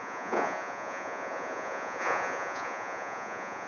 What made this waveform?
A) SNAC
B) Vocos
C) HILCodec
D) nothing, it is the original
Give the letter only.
B